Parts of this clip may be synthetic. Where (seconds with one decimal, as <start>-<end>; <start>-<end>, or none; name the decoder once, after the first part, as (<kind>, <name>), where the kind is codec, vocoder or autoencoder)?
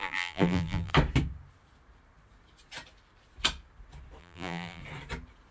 0.0-0.9 (vocoder, BigVGAN v2); 4.2-4.8